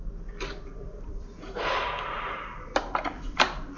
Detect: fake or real fake